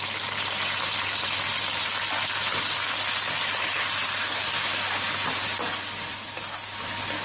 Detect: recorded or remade recorded